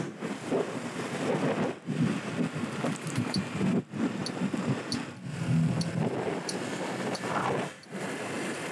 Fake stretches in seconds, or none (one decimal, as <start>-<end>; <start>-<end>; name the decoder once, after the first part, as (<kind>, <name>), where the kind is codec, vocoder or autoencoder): none